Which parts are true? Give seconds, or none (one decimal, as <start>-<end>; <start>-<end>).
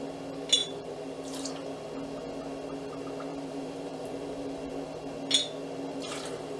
0.0-0.6; 1.5-3.3; 4.7-5.9